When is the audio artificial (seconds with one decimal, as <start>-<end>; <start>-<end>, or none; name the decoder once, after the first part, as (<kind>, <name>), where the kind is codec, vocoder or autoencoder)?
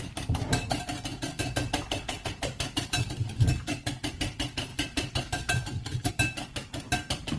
4.7-6.1 (vocoder, BigVGAN v2)